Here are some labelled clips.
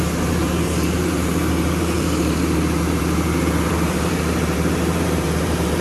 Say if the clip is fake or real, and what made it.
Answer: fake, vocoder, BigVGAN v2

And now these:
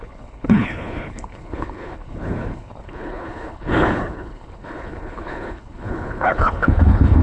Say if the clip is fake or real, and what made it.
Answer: fake, codec, HILCodec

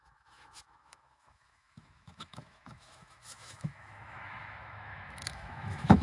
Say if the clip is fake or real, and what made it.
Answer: fake, autoencoder, DAC-VAE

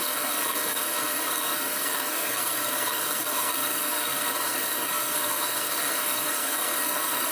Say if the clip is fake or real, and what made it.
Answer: fake, codec, SNAC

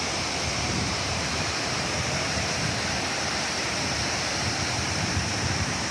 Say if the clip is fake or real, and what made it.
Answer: fake, vocoder, BigVGAN v2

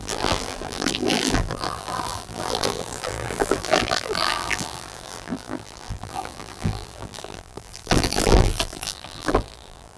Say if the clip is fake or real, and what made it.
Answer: fake, vocoder, BigVGAN v2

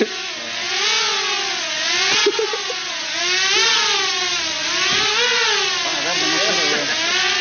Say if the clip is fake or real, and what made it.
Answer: real